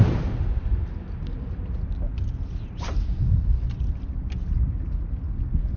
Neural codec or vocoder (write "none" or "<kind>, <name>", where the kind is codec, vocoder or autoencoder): none